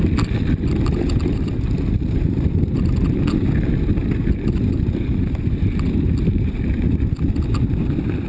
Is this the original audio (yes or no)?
yes